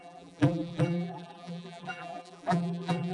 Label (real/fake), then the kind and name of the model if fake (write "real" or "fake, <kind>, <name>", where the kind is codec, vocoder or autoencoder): fake, vocoder, BigVGAN v2